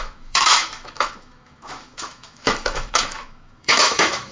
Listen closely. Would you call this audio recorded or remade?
remade